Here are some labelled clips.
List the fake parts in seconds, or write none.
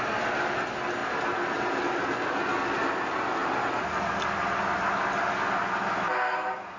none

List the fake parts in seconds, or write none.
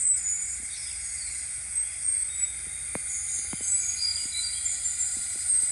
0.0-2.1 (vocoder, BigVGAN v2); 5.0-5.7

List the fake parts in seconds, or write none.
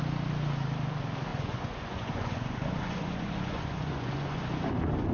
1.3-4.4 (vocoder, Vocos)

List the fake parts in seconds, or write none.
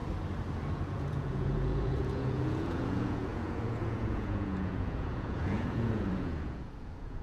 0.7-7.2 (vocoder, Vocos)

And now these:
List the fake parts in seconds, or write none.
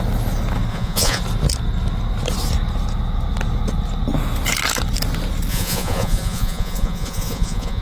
0.7-1.2 (vocoder, Vocos); 5.5-7.8